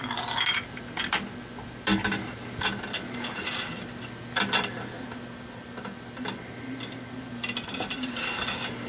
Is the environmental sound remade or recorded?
recorded